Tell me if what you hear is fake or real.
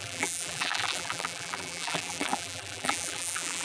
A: fake